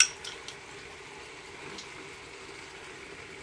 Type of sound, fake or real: real